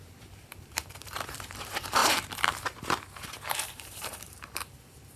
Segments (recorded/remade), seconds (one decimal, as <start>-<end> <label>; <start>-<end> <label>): 0.0-5.2 remade